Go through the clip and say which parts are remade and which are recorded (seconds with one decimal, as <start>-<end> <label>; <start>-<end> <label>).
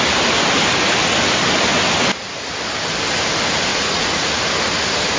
0.0-3.7 recorded; 3.7-4.3 remade; 4.3-5.2 recorded